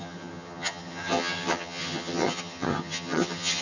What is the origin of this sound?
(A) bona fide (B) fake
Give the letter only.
B